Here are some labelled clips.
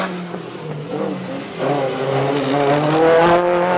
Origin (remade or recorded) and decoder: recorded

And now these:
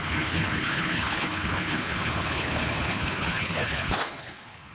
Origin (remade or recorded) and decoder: remade, codec, HILCodec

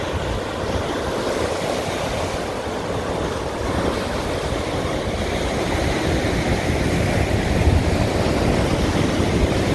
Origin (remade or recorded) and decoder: recorded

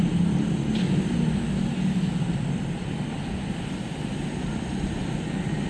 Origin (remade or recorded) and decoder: recorded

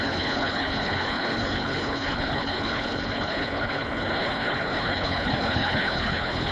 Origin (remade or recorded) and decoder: remade, codec, HILCodec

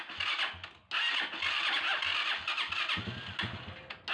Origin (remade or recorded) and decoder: recorded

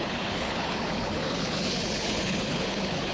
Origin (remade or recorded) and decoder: remade, codec, HILCodec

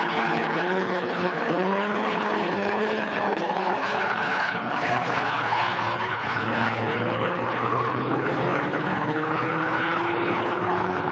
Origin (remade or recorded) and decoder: remade, codec, HILCodec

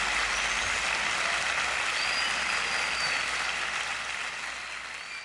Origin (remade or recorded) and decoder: recorded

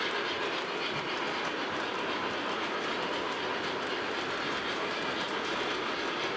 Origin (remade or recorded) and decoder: recorded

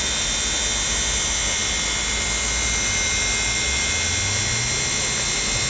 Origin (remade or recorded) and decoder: recorded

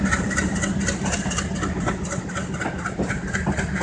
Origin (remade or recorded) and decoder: recorded